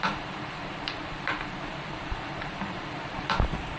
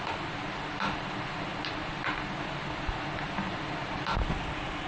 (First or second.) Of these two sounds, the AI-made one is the first